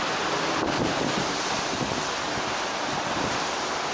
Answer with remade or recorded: recorded